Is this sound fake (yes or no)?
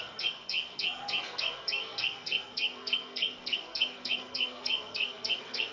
yes